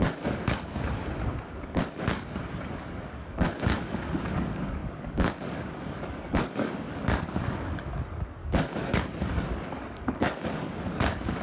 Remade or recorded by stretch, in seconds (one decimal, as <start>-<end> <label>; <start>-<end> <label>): 0.0-1.0 remade; 1.0-1.5 recorded; 1.5-11.4 remade